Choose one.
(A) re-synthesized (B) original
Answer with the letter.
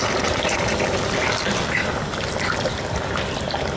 A